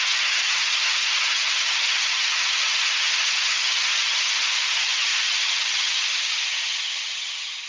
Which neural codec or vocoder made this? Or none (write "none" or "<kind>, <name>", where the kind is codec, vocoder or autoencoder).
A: vocoder, HiFi-GAN